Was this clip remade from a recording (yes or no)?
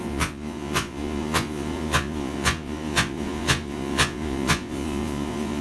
yes